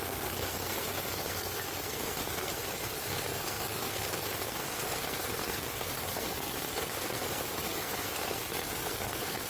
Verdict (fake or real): fake